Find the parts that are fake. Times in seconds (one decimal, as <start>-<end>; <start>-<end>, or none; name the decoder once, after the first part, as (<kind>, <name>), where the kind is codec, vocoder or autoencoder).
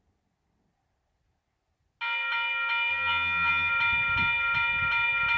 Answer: 2.9-3.7 (vocoder, HiFi-GAN)